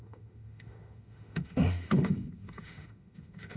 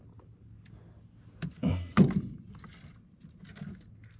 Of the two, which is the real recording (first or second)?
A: second